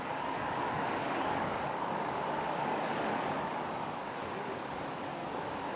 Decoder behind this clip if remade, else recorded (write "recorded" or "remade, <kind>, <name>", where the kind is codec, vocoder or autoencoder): remade, codec, DAC